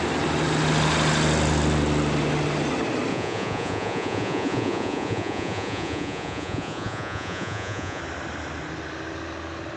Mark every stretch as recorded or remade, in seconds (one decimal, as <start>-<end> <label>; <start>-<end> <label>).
0.0-3.1 recorded; 3.1-8.0 remade; 8.0-9.8 recorded